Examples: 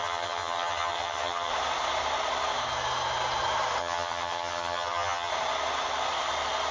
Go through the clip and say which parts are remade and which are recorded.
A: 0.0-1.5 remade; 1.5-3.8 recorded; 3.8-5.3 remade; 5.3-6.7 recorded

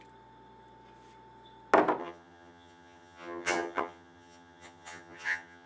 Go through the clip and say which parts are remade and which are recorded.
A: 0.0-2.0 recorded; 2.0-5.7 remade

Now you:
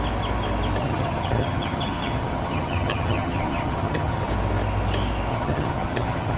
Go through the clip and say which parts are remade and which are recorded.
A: 0.0-0.8 recorded; 0.8-4.3 remade; 4.3-5.3 recorded; 5.3-6.4 remade

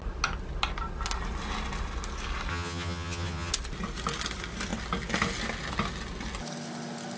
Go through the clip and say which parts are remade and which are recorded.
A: 0.0-2.5 recorded; 2.5-3.5 remade; 3.5-7.2 recorded